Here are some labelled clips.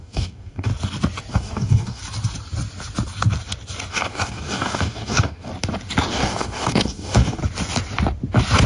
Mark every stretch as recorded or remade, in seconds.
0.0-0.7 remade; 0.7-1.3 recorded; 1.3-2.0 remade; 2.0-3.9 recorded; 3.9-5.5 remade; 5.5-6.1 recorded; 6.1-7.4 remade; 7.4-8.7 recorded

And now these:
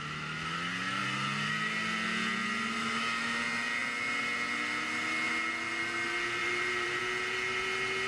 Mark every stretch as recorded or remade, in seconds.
0.0-6.4 recorded; 6.4-7.0 remade; 7.0-8.1 recorded

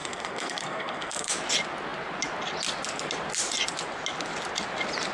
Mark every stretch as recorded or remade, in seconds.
0.0-1.3 remade; 1.3-5.1 recorded

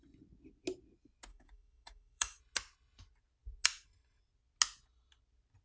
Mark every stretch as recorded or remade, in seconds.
0.0-1.3 recorded; 1.3-2.4 remade; 2.4-5.6 recorded

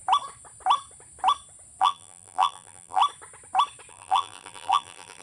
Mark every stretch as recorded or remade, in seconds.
0.0-1.8 recorded; 1.8-3.0 remade; 3.0-3.9 recorded; 3.9-5.2 remade

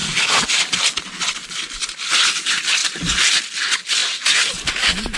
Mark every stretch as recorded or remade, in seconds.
0.0-2.8 recorded; 2.8-3.3 remade; 3.3-4.0 recorded; 4.0-4.7 remade; 4.7-5.2 recorded

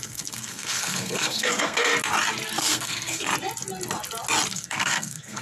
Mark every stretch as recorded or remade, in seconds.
0.0-1.9 remade; 1.9-2.6 recorded; 2.6-3.3 remade; 3.3-4.5 recorded; 4.5-5.4 remade